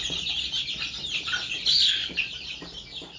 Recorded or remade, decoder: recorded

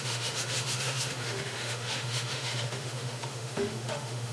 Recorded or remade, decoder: remade, autoencoder, DAC-VAE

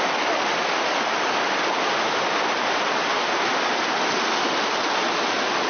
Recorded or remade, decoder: recorded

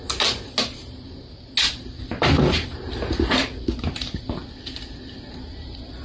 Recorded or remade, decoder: recorded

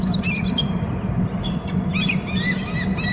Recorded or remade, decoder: recorded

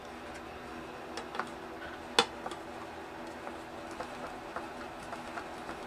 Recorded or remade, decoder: recorded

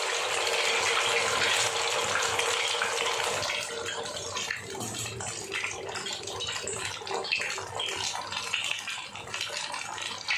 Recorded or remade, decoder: recorded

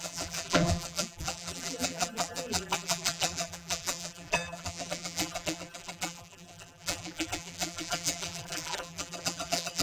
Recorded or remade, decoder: remade, vocoder, BigVGAN v2